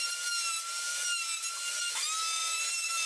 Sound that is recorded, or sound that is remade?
recorded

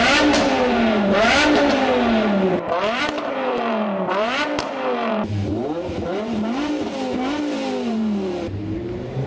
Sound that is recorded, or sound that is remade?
remade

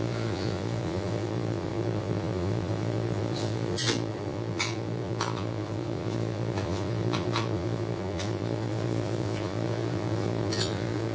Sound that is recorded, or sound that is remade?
remade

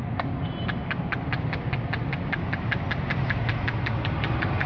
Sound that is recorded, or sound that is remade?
recorded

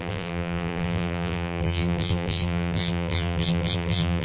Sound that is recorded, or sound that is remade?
remade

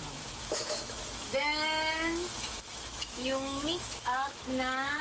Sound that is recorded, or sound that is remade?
remade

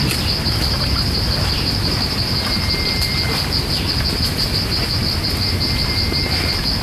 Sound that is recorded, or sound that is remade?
remade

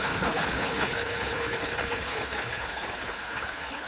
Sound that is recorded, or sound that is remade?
remade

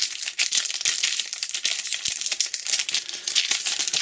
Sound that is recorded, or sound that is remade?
recorded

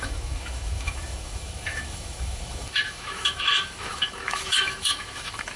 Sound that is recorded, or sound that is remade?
remade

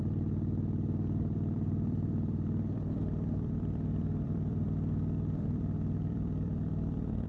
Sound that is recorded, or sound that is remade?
remade